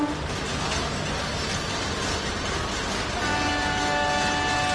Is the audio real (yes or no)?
yes